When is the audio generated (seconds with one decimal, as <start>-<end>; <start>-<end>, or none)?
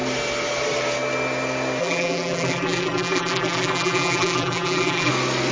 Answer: 1.8-5.1